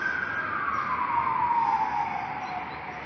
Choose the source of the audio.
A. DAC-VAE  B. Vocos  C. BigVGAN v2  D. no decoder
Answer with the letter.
D